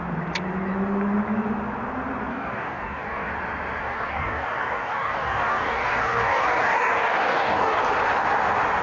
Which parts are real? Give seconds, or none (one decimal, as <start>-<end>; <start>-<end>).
0.0-2.3; 3.3-3.8; 7.8-8.8